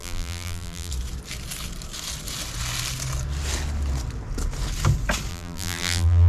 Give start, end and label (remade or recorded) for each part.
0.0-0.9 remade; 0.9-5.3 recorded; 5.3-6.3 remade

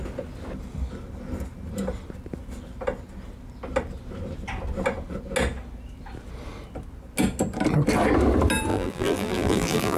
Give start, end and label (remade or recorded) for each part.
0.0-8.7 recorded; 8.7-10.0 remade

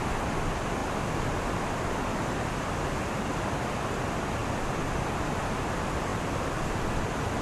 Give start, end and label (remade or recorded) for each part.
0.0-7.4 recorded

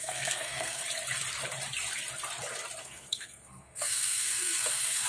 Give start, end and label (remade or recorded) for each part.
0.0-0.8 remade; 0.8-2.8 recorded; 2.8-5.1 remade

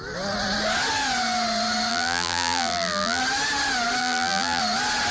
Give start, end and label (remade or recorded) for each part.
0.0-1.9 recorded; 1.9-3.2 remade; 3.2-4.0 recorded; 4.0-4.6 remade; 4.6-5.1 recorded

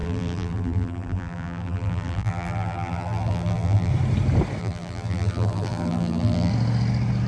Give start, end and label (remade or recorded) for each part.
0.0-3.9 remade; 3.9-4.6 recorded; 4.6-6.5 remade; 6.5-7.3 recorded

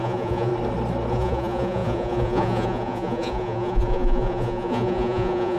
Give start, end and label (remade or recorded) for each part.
0.0-0.5 remade; 0.5-1.1 recorded; 1.1-5.6 remade